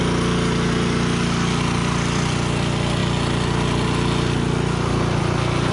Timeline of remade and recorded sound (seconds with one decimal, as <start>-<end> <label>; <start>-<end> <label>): 0.0-1.8 recorded; 1.8-2.3 remade; 2.3-5.7 recorded